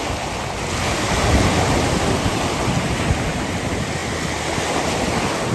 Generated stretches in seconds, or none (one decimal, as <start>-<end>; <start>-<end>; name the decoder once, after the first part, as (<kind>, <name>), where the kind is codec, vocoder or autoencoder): none